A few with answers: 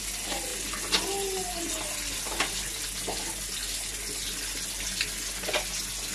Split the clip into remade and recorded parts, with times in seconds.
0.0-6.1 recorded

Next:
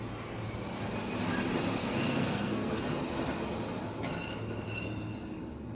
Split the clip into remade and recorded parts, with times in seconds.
0.0-1.8 recorded; 1.8-2.7 remade; 2.7-5.7 recorded

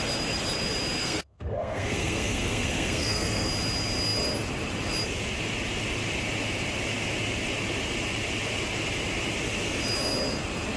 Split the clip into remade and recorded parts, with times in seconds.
0.0-1.0 recorded; 1.0-3.5 remade; 3.5-10.8 recorded